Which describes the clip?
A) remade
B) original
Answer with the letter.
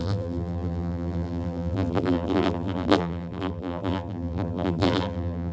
A